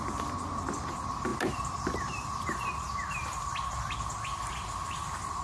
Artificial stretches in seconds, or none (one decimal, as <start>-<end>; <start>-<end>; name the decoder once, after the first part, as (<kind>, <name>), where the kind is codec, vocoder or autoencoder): none